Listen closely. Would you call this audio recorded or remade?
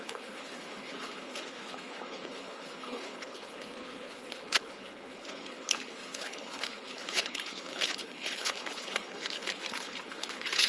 remade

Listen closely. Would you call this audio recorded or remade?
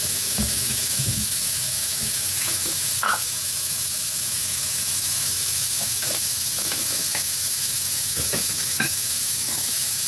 remade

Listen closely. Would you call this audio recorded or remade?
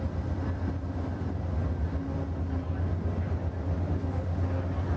recorded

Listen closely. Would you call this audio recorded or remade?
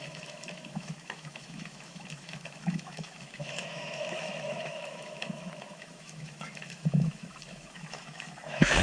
remade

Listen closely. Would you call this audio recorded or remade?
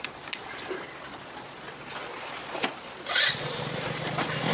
recorded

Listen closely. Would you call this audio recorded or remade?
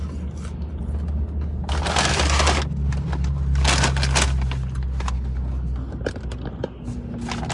recorded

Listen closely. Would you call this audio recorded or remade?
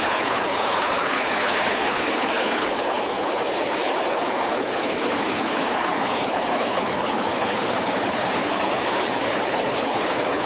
remade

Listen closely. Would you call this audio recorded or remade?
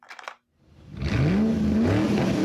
recorded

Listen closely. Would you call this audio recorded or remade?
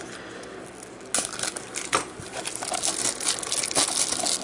recorded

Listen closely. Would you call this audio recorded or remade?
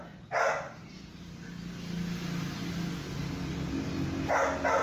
recorded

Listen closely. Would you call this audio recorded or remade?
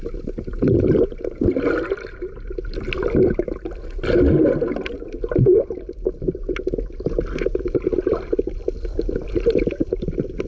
recorded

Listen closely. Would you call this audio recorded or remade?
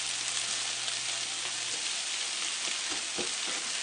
recorded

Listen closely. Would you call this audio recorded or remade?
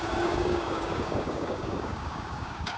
remade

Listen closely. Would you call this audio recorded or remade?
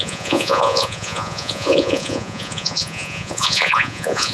remade